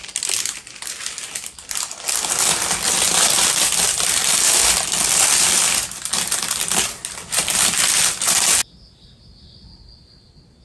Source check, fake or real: real